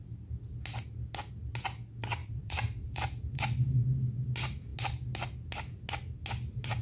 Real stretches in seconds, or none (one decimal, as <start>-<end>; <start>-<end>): 0.0-2.2; 3.4-6.8